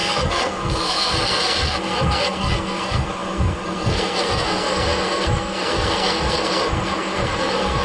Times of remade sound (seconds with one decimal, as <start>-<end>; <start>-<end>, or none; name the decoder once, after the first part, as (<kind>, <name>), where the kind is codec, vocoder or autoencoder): 0.0-7.8 (codec, SNAC)